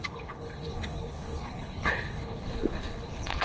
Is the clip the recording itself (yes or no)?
no